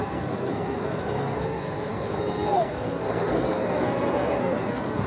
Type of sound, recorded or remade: remade